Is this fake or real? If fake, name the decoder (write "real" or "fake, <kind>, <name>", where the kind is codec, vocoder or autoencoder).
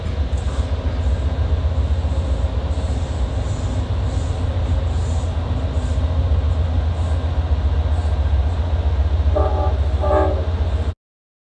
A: real